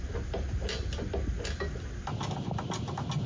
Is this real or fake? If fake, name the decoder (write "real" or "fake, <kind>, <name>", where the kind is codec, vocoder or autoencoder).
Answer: real